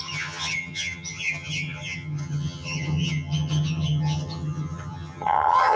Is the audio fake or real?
fake